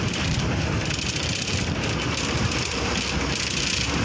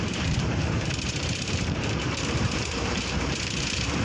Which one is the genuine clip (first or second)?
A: first